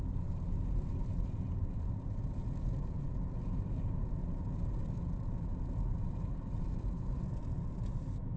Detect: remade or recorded recorded